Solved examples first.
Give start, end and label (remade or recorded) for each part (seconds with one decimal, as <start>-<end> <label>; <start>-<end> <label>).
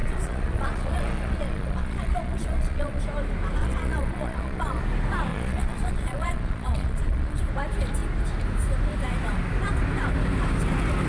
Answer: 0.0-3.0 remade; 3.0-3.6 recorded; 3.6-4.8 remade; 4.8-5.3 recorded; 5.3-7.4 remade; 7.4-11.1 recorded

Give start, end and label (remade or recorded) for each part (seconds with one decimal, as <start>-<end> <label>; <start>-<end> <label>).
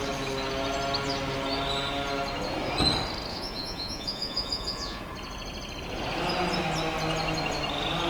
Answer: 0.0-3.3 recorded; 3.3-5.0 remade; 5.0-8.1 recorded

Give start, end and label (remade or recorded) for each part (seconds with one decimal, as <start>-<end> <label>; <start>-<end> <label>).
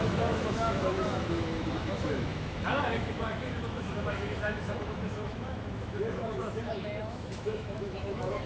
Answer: 0.0-8.5 remade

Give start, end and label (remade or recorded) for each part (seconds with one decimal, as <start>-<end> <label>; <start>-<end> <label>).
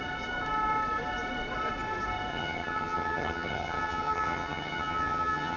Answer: 0.0-2.3 recorded; 2.3-5.6 remade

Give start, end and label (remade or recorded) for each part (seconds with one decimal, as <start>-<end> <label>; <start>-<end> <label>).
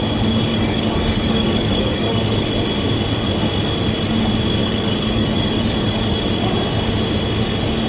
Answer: 0.0-0.5 recorded; 0.5-2.5 remade; 2.5-4.6 recorded; 4.6-6.2 remade; 6.2-7.9 recorded